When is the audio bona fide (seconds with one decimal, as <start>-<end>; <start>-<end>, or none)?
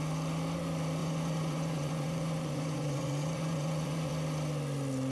0.0-1.0; 4.1-5.1